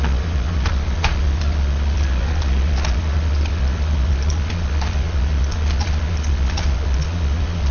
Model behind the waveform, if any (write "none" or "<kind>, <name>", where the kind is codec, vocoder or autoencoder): vocoder, Vocos